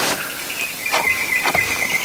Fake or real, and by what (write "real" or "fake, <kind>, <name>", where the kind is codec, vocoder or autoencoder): real